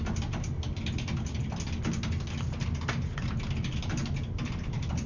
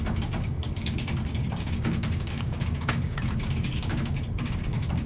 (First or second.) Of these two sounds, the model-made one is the second